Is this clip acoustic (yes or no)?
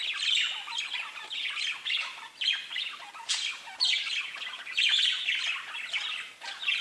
yes